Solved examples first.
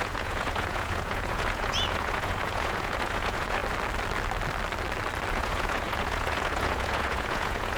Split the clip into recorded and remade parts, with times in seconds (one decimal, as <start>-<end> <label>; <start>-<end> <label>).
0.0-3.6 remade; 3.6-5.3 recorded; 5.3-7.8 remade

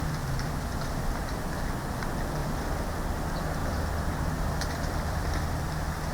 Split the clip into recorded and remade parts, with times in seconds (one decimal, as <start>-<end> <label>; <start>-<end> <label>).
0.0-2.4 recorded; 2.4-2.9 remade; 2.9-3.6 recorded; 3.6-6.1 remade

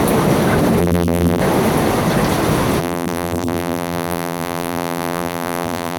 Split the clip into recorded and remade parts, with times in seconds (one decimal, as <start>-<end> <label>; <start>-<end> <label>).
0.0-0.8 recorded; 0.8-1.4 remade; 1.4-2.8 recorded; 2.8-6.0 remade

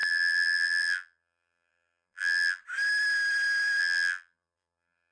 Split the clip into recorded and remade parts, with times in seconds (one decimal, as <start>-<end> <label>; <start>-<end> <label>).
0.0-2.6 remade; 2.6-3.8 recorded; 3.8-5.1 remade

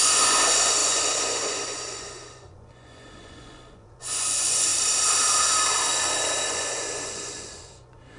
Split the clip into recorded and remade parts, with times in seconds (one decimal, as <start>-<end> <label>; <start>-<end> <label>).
0.0-4.7 remade; 4.7-6.5 recorded; 6.5-8.2 remade